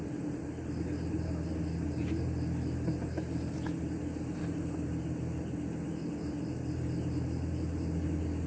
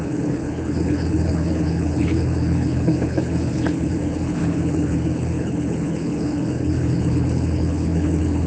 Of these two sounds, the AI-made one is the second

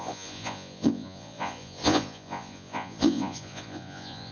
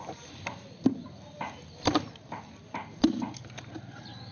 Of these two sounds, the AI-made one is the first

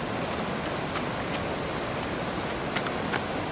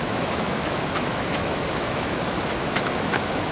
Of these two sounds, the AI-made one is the second